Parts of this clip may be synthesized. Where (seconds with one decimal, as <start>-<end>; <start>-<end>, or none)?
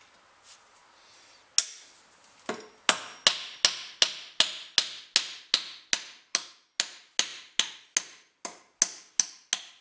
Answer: none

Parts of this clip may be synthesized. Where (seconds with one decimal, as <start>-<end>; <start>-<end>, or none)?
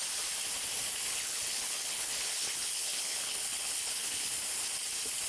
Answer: 1.1-4.3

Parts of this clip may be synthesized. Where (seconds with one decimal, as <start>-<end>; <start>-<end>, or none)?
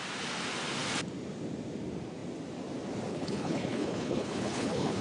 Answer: 3.1-5.0